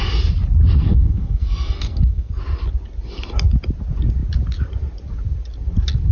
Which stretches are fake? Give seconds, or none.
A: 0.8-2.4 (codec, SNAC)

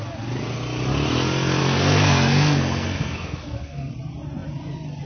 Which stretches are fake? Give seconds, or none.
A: 1.6-3.9 (codec, SNAC)

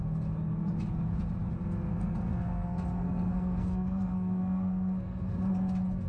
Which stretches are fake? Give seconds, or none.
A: 1.9-5.3 (codec, SNAC)